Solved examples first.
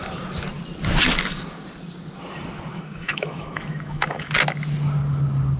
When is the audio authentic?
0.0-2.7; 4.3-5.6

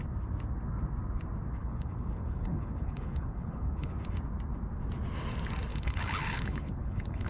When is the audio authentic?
0.0-1.6; 3.9-5.7

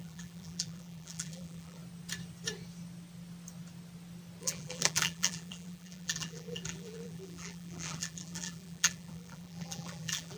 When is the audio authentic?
1.8-4.4

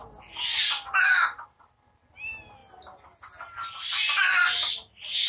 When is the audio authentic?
0.0-5.3

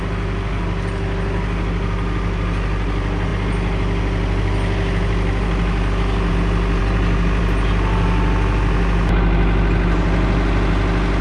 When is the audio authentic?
0.0-11.2

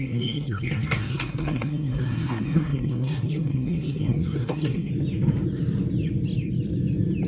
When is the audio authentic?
4.9-7.3

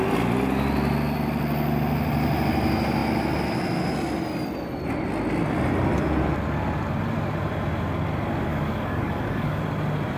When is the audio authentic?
0.0-8.5; 9.6-10.2

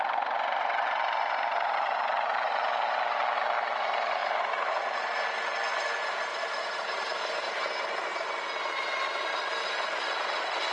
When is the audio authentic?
0.0-4.2; 5.7-6.3; 6.8-10.7